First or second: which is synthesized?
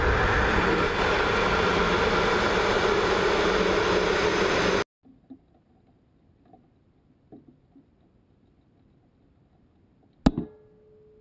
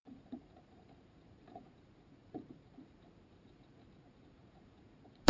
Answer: second